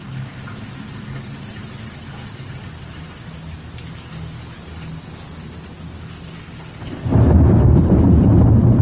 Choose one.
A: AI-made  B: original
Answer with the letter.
B